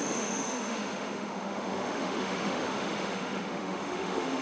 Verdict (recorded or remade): remade